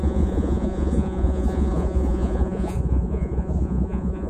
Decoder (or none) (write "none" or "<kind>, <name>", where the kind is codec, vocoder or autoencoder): vocoder, Vocos